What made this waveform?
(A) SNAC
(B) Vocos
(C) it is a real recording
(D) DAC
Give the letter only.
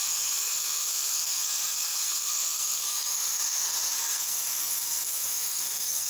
A